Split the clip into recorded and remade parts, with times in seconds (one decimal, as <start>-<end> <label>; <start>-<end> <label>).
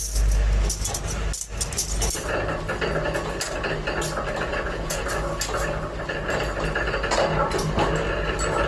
0.0-4.5 recorded; 4.5-5.0 remade; 5.0-8.7 recorded